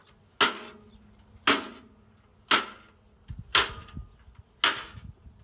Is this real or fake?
real